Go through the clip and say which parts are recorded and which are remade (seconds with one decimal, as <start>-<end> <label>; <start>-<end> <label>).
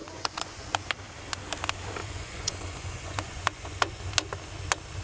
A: 0.0-0.9 remade; 0.9-2.0 recorded; 2.0-4.0 remade; 4.0-5.0 recorded